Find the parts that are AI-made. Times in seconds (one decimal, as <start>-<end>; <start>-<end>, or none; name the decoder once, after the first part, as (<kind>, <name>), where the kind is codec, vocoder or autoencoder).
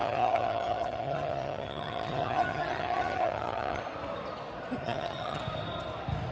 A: 0.0-3.8 (vocoder, HiFi-GAN); 4.8-5.4